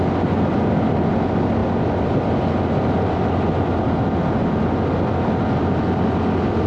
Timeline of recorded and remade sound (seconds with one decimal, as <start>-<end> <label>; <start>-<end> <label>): 0.0-6.7 recorded